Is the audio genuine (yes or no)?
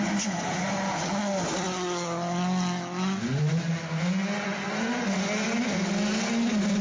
yes